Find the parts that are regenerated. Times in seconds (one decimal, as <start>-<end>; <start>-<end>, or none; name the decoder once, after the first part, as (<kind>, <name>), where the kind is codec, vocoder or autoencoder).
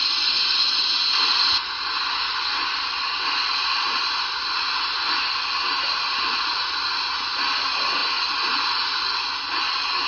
8.0-9.7 (vocoder, BigVGAN v2)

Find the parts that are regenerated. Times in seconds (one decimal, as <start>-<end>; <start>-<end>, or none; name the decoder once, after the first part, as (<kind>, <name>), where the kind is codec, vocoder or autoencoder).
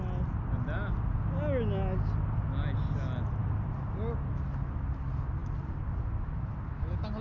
5.4-6.0 (vocoder, BigVGAN v2)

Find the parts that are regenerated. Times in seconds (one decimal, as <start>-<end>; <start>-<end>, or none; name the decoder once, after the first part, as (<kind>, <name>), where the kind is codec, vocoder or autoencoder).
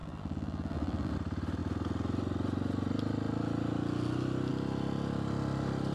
0.0-1.1 (vocoder, BigVGAN v2)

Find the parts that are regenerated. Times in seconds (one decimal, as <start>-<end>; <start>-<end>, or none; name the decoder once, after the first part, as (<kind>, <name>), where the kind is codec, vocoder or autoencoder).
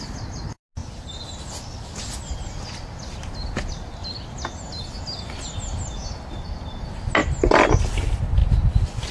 none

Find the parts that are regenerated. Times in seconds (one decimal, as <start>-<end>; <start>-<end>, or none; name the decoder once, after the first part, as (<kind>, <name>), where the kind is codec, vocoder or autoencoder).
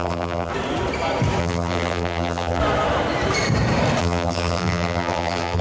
0.0-0.5 (vocoder, BigVGAN v2); 1.4-2.6; 4.0-5.6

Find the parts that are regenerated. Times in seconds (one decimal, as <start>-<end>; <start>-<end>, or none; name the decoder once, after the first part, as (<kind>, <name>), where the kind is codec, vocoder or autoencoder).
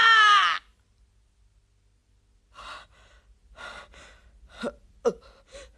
0.0-0.9 (vocoder, BigVGAN v2)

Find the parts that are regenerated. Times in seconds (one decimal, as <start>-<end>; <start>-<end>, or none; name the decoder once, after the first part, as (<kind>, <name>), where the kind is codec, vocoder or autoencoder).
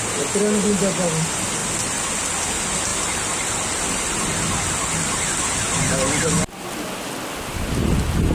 none